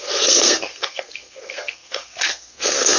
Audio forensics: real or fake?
fake